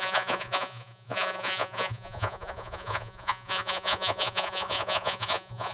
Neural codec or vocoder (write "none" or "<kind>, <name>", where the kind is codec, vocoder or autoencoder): vocoder, Vocos